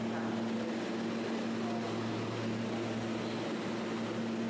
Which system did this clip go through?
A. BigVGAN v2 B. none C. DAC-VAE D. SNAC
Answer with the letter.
B